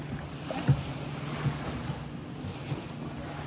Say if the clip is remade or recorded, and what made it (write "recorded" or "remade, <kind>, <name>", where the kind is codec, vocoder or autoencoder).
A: recorded